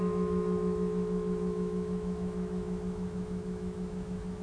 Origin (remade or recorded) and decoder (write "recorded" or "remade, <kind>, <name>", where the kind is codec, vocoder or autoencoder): remade, autoencoder, DAC-VAE